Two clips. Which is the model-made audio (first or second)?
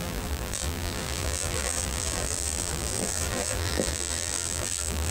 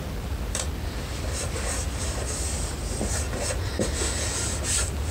first